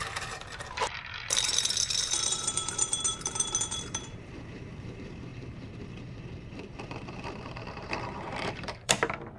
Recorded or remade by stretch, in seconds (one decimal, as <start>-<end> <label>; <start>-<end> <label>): 0.0-9.4 remade